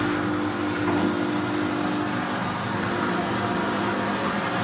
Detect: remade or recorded recorded